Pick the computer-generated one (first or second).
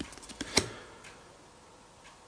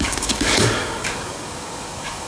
second